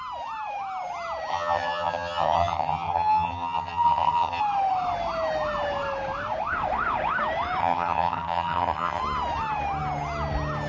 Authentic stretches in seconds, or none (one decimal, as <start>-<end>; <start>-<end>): 0.0-1.3; 4.4-7.6; 9.0-10.7